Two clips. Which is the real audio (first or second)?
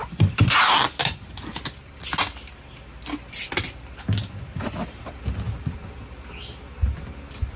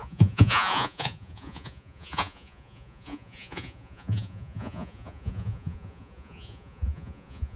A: first